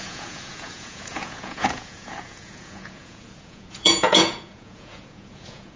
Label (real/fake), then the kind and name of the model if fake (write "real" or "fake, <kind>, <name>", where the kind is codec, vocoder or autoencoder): fake, vocoder, Vocos